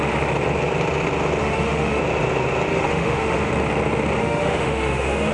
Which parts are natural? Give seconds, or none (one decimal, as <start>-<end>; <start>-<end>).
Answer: 0.0-1.4; 2.0-2.7; 3.5-4.2

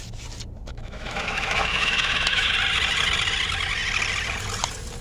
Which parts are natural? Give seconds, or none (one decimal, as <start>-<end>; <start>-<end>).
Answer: 0.0-0.7; 2.5-5.0

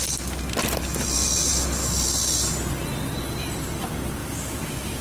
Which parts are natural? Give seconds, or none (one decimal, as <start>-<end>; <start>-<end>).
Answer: 0.0-4.2

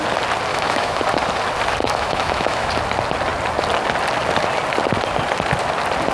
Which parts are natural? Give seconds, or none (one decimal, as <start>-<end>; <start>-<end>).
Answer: 0.0-0.5; 1.0-1.8; 2.7-6.1

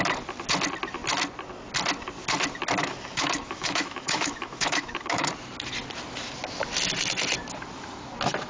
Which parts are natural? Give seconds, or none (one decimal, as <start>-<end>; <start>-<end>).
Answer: 0.0-2.8; 5.3-8.5